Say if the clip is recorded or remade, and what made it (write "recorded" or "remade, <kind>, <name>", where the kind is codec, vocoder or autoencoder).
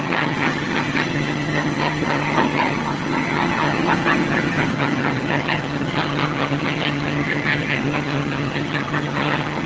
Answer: remade, vocoder, HiFi-GAN